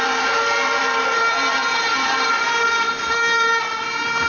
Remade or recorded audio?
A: remade